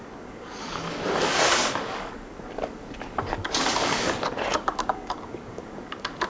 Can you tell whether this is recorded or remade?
remade